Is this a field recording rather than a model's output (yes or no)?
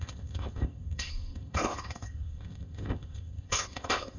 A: no